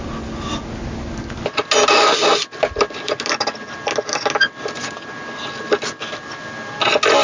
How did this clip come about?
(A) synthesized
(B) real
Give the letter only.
B